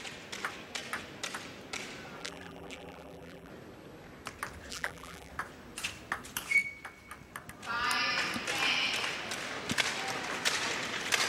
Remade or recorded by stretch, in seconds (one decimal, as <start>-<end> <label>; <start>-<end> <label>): 0.0-2.2 recorded; 2.2-3.5 remade; 3.5-4.7 recorded; 4.7-5.3 remade; 5.3-11.3 recorded